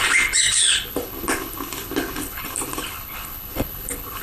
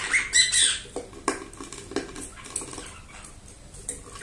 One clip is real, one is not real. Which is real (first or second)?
second